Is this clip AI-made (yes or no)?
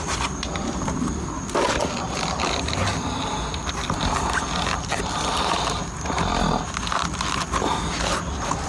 no